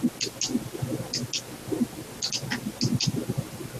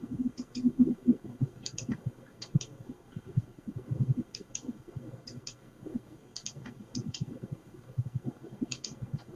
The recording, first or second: first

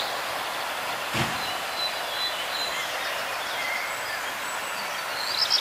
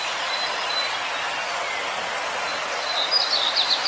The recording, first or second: first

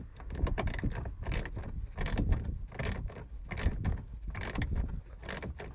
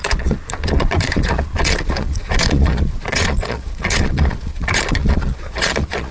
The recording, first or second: first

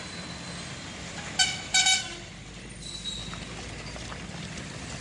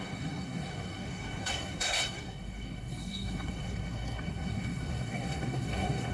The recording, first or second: first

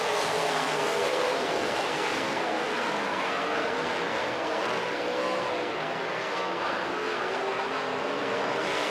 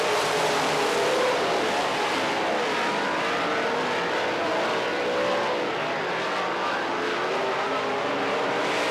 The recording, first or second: second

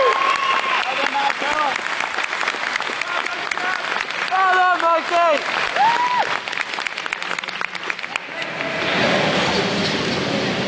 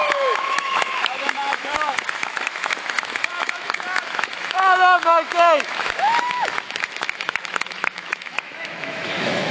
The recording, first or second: first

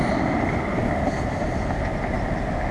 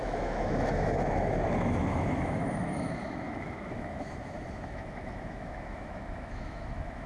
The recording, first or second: first